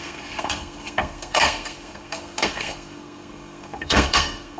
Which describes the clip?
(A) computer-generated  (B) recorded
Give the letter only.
A